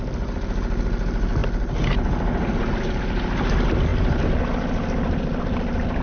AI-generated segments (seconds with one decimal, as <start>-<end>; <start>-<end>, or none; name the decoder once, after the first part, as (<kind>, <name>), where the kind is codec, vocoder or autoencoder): none